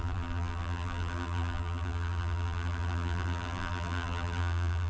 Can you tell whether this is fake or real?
fake